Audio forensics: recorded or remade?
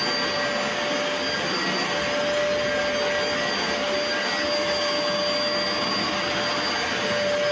recorded